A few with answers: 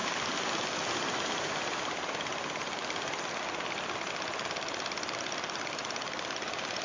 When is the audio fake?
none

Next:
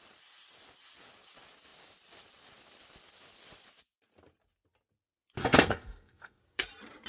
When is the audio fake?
5.4-6.4 (codec, SNAC)

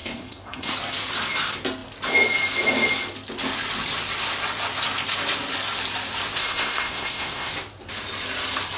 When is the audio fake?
0.0-0.7 (codec, SNAC); 6.4-7.5